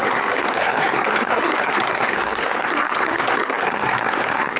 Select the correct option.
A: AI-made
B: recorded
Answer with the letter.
A